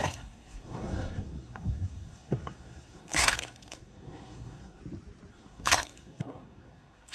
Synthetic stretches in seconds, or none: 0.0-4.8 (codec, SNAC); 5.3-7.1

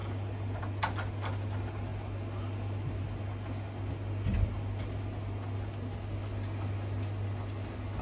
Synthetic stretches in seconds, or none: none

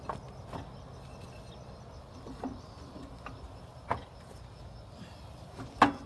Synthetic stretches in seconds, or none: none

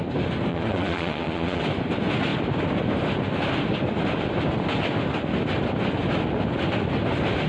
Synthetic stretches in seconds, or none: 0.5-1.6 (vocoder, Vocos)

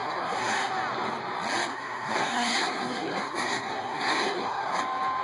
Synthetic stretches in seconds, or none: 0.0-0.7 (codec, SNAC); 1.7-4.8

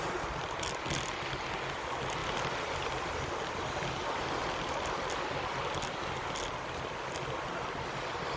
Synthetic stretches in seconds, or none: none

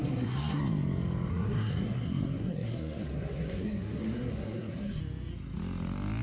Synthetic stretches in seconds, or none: 0.0-0.6 (codec, SNAC); 1.3-5.0

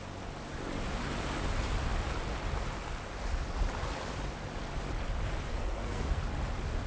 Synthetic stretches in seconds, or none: 5.5-6.2 (codec, SNAC)